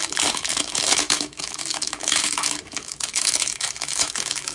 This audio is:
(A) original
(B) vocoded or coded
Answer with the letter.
B